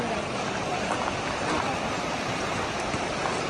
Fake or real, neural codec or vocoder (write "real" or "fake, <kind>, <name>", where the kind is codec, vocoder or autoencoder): real